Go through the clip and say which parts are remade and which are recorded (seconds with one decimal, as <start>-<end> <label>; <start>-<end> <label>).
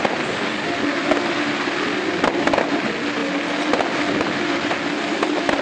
0.0-5.6 recorded